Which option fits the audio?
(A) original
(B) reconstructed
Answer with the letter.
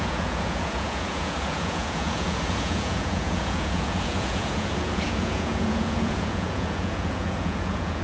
B